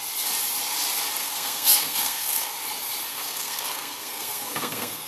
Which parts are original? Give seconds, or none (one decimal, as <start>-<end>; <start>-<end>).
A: 0.0-1.2; 2.5-3.1